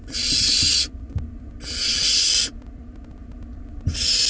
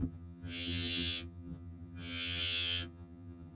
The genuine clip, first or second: first